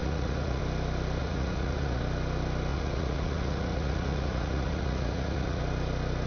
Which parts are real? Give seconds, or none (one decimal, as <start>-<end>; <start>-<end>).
0.6-1.2; 2.0-2.7; 5.6-6.3